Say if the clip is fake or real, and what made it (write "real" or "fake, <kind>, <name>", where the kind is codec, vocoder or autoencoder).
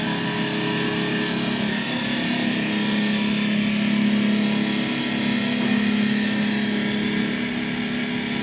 real